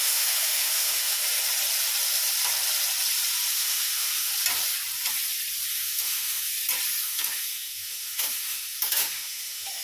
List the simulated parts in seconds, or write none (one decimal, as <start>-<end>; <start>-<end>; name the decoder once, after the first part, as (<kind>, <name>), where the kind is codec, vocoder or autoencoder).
0.0-1.2 (autoencoder, DAC-VAE); 3.5-4.3; 5.7-6.5; 7.0-9.8

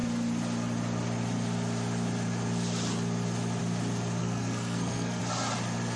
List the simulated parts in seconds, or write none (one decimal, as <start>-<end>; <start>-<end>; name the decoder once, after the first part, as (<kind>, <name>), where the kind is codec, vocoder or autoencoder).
4.2-5.2 (codec, SNAC)

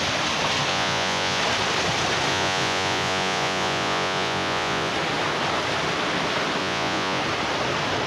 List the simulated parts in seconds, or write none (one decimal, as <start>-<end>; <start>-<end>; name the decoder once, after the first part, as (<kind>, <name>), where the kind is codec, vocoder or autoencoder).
0.7-1.4 (vocoder, Vocos); 2.3-4.9; 6.6-7.2